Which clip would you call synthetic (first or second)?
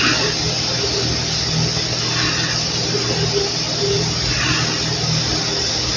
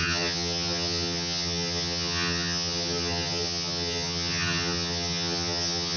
second